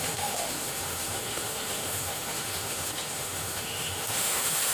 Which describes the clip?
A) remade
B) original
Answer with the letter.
A